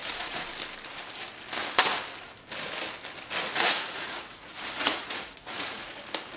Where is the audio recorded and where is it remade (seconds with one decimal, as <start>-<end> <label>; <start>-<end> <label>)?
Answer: 0.0-0.5 remade; 0.5-3.5 recorded; 3.5-6.0 remade; 6.0-6.4 recorded